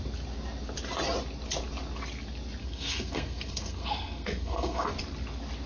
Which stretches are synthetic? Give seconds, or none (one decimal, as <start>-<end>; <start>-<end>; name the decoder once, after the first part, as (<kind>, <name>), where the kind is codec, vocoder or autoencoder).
2.6-4.9 (codec, SNAC)